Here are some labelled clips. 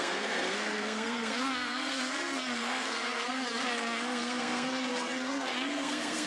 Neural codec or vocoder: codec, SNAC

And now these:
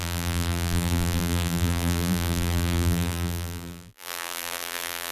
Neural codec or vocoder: vocoder, BigVGAN v2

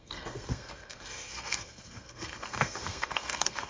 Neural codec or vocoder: codec, SNAC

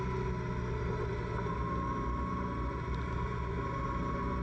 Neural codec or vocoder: none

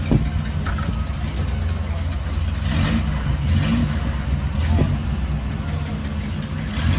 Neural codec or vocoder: none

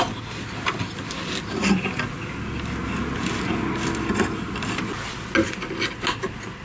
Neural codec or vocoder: none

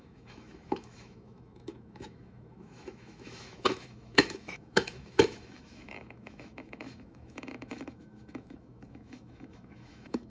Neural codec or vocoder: autoencoder, DAC-VAE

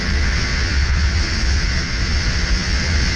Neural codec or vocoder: vocoder, Vocos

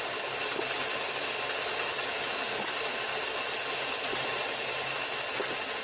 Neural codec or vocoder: none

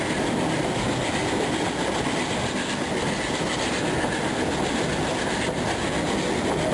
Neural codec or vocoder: none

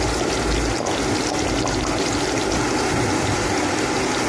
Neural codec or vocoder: none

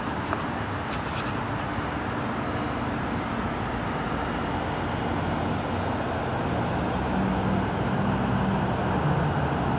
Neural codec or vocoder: none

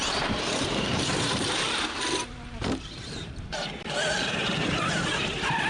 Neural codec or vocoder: vocoder, BigVGAN v2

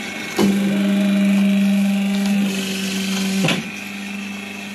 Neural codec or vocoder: none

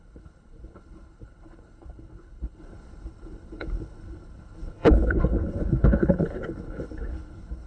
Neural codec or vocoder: codec, HILCodec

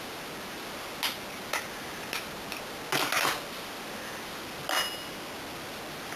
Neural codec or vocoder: none